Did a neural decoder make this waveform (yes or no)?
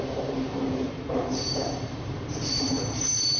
yes